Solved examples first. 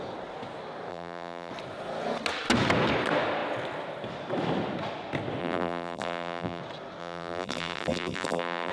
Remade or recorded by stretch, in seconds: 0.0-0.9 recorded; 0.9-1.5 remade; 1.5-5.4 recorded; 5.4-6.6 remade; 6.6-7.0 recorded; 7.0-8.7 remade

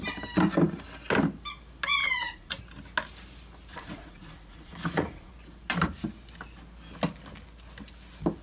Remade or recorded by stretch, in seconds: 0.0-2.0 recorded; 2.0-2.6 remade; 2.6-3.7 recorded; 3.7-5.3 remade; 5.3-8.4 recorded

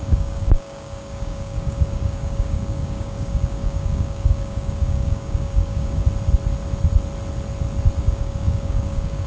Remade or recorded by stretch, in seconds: 0.0-6.0 remade; 6.0-8.0 recorded; 8.0-9.3 remade

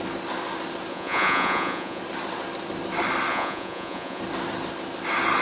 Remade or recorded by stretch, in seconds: 0.0-0.9 recorded; 0.9-2.0 remade; 2.0-3.3 recorded; 3.3-4.2 remade; 4.2-5.4 recorded

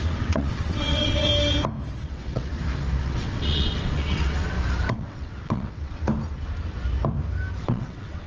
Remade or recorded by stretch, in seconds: 0.0-1.3 remade; 1.3-2.0 recorded; 2.0-2.5 remade; 2.5-3.0 recorded; 3.0-4.4 remade; 4.4-4.9 recorded; 4.9-6.0 remade; 6.0-7.6 recorded; 7.6-8.3 remade

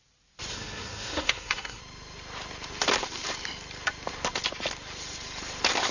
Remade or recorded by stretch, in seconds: 0.0-0.5 recorded; 0.5-1.8 remade; 1.8-5.9 recorded

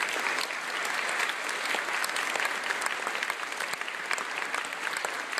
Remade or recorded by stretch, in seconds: 0.0-5.4 recorded